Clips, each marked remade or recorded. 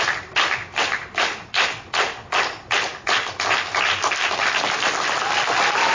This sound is recorded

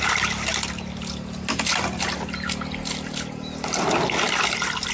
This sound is recorded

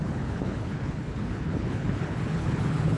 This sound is remade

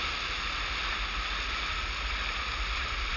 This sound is recorded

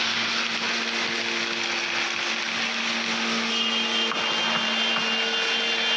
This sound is recorded